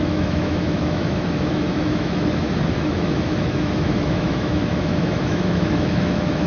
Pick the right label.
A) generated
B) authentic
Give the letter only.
A